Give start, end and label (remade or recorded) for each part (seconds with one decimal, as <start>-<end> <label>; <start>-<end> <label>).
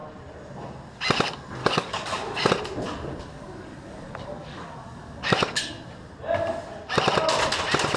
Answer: 0.0-1.6 recorded; 1.6-2.5 remade; 2.5-3.3 recorded; 3.3-5.6 remade; 5.6-8.0 recorded